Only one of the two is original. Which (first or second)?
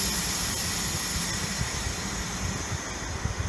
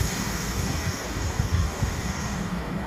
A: first